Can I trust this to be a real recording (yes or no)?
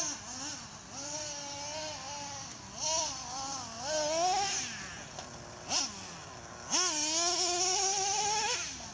yes